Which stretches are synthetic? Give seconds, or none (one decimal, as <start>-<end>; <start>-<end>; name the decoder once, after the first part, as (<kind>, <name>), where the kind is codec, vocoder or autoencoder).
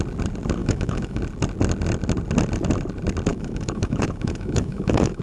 0.6-1.2 (autoencoder, DAC-VAE); 3.3-5.2